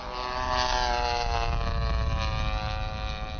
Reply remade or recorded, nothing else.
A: recorded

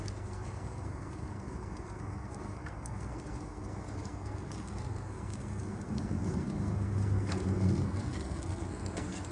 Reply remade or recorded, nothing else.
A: remade